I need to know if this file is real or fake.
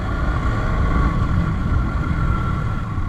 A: real